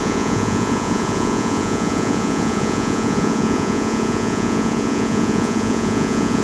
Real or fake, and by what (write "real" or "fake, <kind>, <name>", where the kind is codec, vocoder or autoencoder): fake, vocoder, Vocos